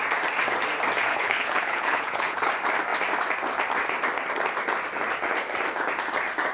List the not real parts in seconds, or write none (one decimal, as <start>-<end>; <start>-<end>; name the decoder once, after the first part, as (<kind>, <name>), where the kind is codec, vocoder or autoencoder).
1.1-2.5 (codec, HILCodec)